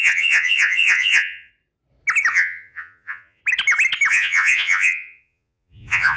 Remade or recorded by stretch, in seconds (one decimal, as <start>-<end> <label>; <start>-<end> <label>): 0.0-1.5 remade; 1.5-2.3 recorded; 2.3-3.4 remade; 3.4-4.1 recorded; 4.1-6.2 remade